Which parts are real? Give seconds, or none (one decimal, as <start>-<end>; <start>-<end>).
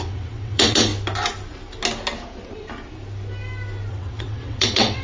0.9-3.9